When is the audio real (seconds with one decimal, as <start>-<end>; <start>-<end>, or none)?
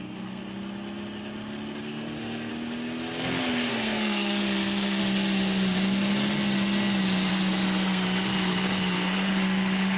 0.4-1.8; 2.5-3.7; 5.0-7.3